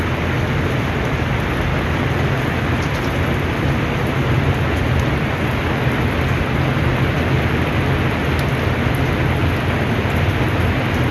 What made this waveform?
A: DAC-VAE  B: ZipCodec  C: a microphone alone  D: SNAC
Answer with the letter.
C